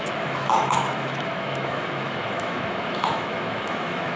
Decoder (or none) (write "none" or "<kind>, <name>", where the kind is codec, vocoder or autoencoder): autoencoder, DAC-VAE